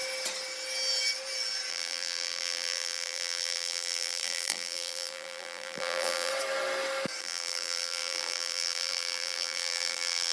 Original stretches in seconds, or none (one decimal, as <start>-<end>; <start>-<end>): 0.0-1.7; 6.3-7.2